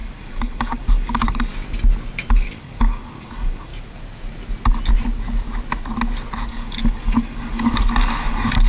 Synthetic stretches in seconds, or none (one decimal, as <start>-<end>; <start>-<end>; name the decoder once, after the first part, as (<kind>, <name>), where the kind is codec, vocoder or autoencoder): 0.0-1.5 (codec, DAC); 2.3-3.7; 6.5-8.7